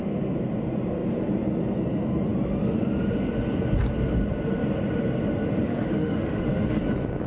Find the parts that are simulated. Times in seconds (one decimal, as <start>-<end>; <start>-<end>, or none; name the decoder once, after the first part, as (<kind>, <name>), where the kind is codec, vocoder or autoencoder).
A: 5.6-6.8 (autoencoder, DAC-VAE)